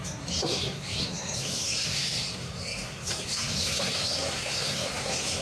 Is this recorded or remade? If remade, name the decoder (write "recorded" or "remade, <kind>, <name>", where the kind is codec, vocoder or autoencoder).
remade, codec, SNAC